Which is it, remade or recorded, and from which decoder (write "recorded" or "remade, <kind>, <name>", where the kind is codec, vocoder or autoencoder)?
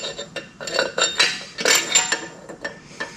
recorded